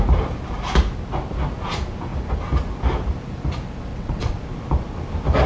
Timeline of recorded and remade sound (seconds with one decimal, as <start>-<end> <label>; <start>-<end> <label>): 0.0-3.9 recorded; 3.9-4.4 remade; 4.4-5.5 recorded